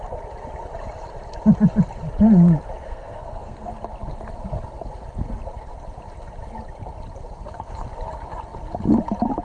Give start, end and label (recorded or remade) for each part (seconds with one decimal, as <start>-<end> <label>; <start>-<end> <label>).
0.0-2.8 recorded; 2.8-3.7 remade; 3.7-9.4 recorded